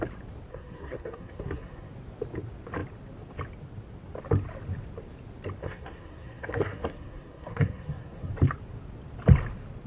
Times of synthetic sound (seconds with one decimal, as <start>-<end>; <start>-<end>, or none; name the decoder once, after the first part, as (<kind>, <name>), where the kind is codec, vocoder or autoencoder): 0.5-1.9 (codec, SNAC); 5.6-8.3